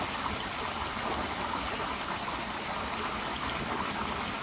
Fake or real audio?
real